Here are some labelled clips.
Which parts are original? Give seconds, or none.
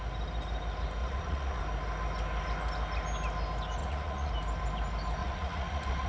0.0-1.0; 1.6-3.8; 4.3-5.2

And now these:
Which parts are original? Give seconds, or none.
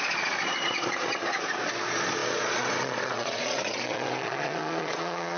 none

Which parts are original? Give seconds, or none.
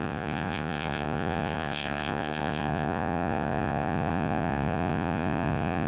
none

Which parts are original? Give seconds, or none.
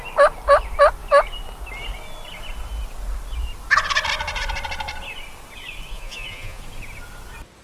0.0-5.9; 6.6-7.6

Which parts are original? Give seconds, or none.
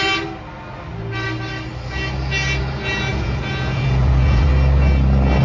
0.0-3.1; 4.5-5.4